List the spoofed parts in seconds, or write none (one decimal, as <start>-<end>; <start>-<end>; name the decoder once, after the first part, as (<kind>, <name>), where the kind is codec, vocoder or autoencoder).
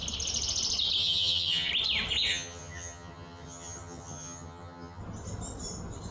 1.0-1.7 (vocoder, HiFi-GAN); 2.3-5.0